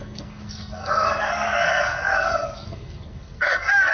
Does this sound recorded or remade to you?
remade